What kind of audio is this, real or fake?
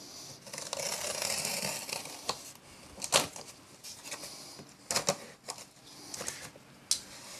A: real